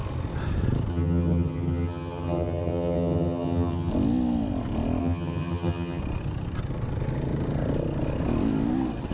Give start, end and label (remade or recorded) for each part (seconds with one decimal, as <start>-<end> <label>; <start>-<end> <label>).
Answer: 0.0-0.9 recorded; 0.9-3.9 remade; 3.9-5.0 recorded; 5.0-6.0 remade; 6.0-9.1 recorded